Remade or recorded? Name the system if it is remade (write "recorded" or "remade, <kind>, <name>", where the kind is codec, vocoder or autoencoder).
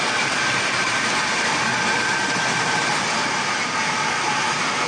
recorded